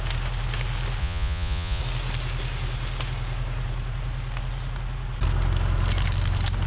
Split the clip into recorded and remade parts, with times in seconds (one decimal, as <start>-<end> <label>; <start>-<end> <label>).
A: 0.0-1.0 recorded; 1.0-1.8 remade; 1.8-6.7 recorded